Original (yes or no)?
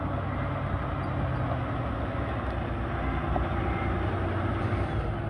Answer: yes